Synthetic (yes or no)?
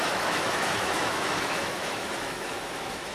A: yes